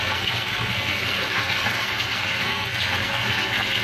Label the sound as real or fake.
fake